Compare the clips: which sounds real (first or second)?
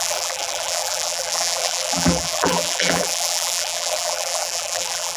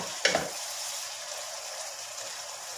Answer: second